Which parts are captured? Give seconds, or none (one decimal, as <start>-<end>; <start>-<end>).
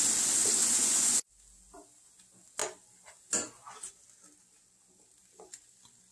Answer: 0.0-0.6; 1.3-6.1